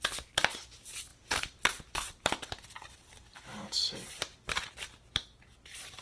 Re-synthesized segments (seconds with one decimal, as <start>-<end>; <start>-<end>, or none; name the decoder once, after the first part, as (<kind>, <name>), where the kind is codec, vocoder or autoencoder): 1.1-4.7 (vocoder, BigVGAN v2)